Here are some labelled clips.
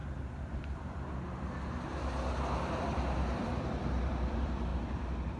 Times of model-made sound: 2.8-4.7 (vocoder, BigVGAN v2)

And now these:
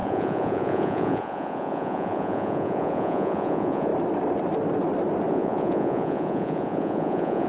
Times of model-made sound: 0.0-3.9 (vocoder, Vocos); 5.3-7.5

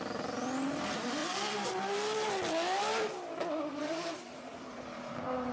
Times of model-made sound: 0.0-1.2 (vocoder, BigVGAN v2); 3.8-5.5

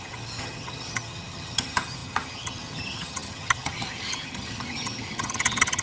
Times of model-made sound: 0.0-5.8 (vocoder, HiFi-GAN)

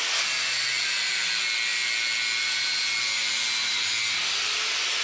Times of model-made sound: none

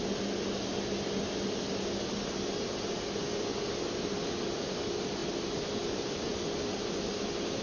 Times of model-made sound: none

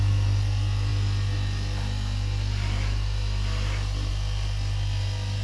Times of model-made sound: none

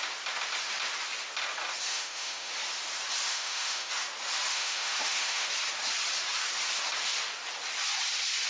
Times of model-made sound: 1.9-2.5 (autoencoder, DAC-VAE); 3.3-3.9; 4.5-5.5